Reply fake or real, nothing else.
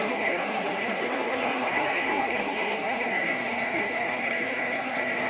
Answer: fake